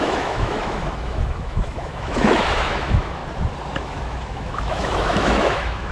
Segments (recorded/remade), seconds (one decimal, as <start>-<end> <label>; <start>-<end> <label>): 0.0-3.2 remade; 3.2-3.8 recorded; 3.8-5.9 remade

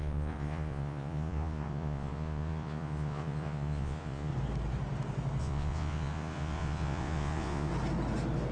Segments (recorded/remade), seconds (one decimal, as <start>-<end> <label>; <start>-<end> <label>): 0.0-4.3 remade; 4.3-5.4 recorded; 5.4-7.7 remade; 7.7-8.5 recorded

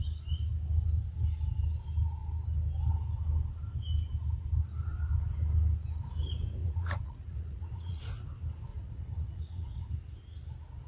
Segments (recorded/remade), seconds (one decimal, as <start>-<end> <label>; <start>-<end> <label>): 0.0-6.6 recorded; 6.6-8.0 remade; 8.0-8.7 recorded; 8.7-9.8 remade; 9.8-10.9 recorded

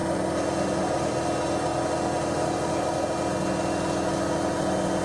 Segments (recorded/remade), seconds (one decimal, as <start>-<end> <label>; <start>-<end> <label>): 0.0-5.0 recorded

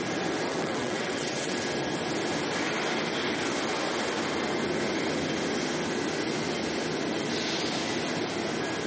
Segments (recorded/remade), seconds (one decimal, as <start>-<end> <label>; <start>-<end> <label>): 0.0-0.5 recorded; 0.5-1.6 remade; 1.6-8.9 recorded